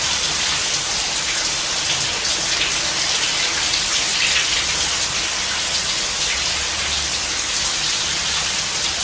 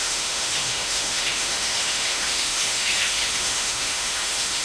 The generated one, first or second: second